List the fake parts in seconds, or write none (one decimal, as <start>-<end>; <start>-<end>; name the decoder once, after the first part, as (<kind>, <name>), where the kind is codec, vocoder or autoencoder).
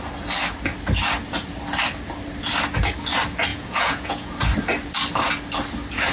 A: 3.5-4.3 (vocoder, Vocos)